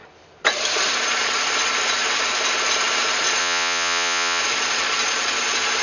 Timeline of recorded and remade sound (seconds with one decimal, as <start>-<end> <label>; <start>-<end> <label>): 0.0-3.4 recorded; 3.4-4.4 remade; 4.4-5.8 recorded